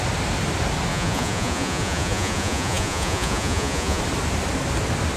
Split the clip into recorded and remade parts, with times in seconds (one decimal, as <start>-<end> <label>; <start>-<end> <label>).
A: 0.0-0.9 recorded; 0.9-4.0 remade; 4.0-5.2 recorded